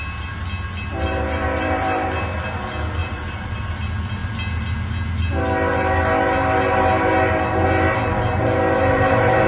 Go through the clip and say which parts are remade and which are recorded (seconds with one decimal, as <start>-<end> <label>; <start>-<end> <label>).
0.0-0.9 recorded; 0.9-2.1 remade; 2.1-3.0 recorded; 3.0-3.6 remade; 3.6-9.5 recorded